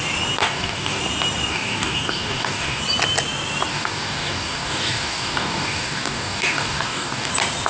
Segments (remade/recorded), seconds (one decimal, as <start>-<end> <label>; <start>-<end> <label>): 0.0-0.4 recorded; 0.4-1.0 remade; 1.0-1.5 recorded; 1.5-2.8 remade; 2.8-3.7 recorded; 3.7-7.3 remade; 7.3-7.7 recorded